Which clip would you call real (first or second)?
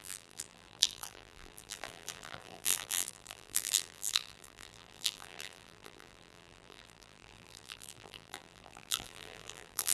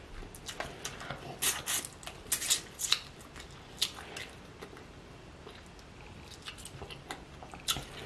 second